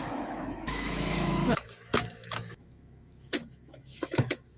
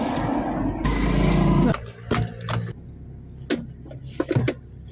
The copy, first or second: first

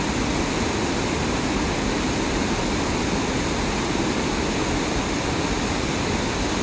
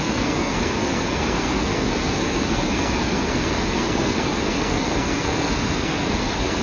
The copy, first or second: second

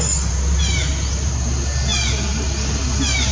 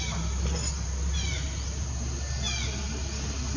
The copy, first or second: second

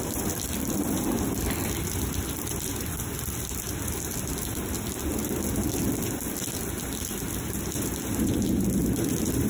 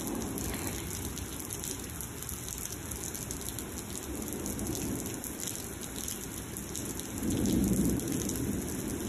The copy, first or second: first